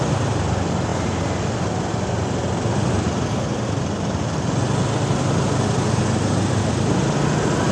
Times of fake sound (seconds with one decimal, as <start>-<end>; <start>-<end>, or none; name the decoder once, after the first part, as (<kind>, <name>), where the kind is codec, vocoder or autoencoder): none